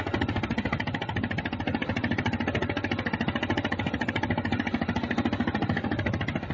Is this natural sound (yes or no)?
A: yes